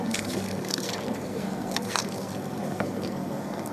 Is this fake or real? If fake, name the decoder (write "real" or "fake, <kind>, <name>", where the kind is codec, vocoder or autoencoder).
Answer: fake, codec, SNAC